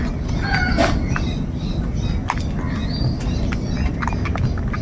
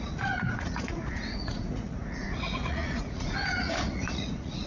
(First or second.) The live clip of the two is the first